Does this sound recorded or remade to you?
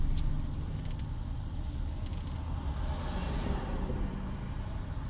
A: recorded